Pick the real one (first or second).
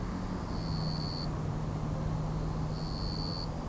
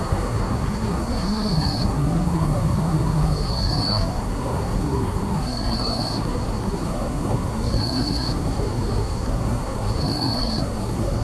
first